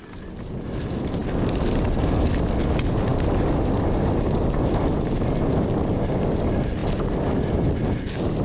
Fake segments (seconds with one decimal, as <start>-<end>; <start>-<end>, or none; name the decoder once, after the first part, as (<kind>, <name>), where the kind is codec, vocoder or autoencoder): none